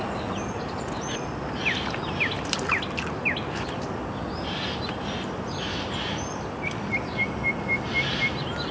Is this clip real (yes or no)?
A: yes